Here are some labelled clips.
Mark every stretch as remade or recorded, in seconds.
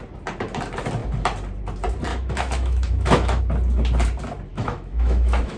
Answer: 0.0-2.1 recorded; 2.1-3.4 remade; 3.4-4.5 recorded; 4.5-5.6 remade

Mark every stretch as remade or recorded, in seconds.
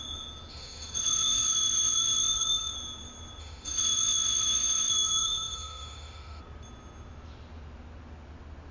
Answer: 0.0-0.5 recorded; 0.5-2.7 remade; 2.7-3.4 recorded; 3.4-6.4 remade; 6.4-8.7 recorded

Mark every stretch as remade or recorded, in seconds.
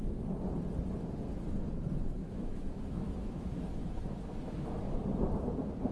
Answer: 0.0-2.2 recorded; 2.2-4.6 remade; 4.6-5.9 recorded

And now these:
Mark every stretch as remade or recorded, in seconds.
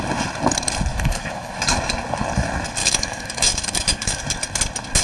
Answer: 0.0-0.9 recorded; 0.9-1.6 remade; 1.6-2.8 recorded; 2.8-4.2 remade; 4.2-5.0 recorded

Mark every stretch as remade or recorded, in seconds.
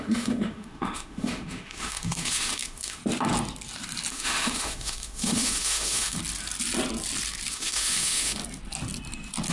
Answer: 0.0-3.0 remade; 3.0-4.1 recorded; 4.1-6.2 remade; 6.2-7.5 recorded; 7.5-8.4 remade; 8.4-9.5 recorded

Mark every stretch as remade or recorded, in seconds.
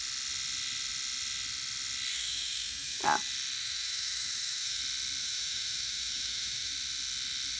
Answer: 0.0-2.1 recorded; 2.1-3.0 remade; 3.0-3.6 recorded; 3.6-4.8 remade; 4.8-5.2 recorded; 5.2-6.7 remade; 6.7-7.6 recorded